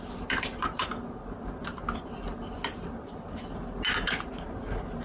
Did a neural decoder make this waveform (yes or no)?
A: no